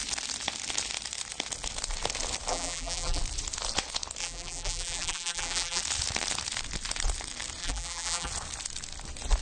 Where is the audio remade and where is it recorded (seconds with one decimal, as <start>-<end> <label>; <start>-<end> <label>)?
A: 0.0-2.5 recorded; 2.5-3.2 remade; 3.2-4.2 recorded; 4.2-5.8 remade; 5.8-7.6 recorded; 7.6-8.3 remade; 8.3-9.4 recorded